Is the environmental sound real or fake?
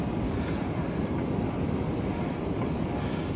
real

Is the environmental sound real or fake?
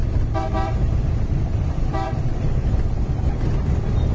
fake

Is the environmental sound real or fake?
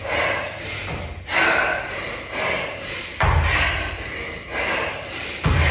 real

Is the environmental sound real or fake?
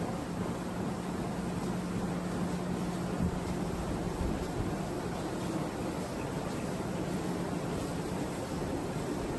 real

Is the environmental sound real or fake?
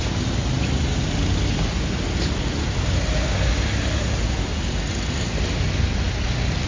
real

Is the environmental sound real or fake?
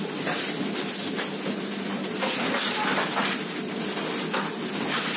real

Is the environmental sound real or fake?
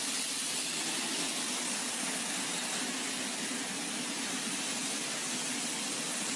real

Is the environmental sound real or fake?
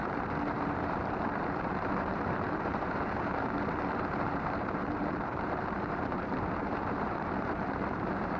fake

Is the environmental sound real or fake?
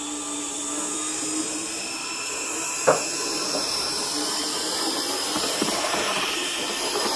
fake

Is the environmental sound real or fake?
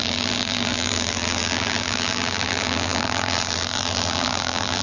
fake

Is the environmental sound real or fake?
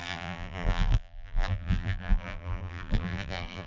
fake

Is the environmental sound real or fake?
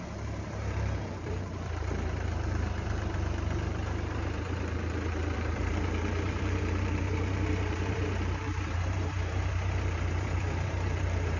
fake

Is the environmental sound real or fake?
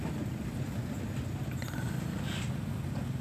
real